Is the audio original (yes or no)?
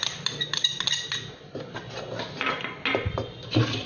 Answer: yes